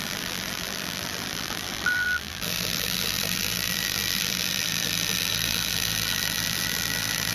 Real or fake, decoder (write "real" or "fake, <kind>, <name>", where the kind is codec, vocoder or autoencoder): fake, vocoder, BigVGAN v2